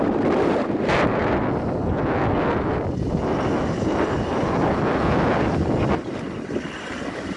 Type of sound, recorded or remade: recorded